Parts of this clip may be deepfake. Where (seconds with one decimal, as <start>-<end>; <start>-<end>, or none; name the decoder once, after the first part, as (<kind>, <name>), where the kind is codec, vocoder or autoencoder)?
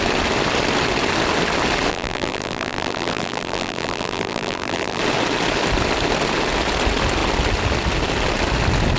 1.9-5.0 (vocoder, BigVGAN v2)